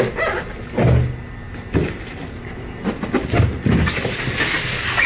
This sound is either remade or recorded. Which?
recorded